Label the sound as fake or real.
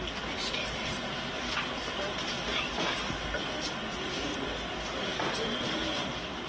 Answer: real